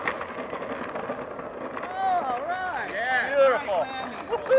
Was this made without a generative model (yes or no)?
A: yes